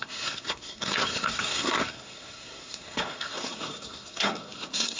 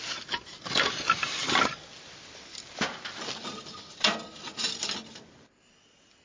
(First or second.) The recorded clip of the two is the second